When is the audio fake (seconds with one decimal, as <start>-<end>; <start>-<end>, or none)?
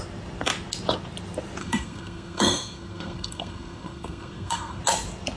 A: 1.6-4.8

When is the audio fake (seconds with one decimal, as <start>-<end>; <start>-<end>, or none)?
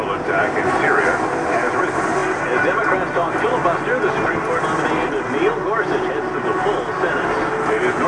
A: none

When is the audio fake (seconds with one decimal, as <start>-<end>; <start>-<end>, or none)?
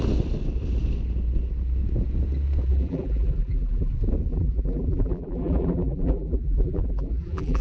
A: 2.6-3.9; 4.3-7.6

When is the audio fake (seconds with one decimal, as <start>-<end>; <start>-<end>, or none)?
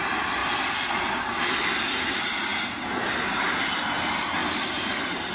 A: none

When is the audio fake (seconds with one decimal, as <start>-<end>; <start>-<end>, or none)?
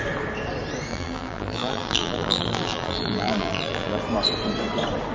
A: 0.9-4.0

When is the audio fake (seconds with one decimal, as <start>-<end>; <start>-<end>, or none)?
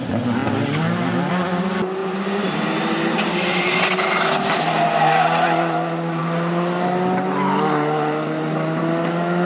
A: 2.0-4.2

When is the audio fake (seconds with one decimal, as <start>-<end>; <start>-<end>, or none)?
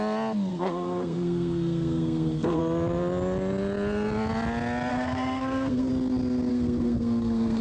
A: 0.5-2.6; 4.9-5.9; 6.5-7.6